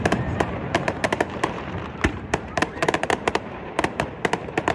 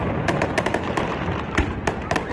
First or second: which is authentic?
second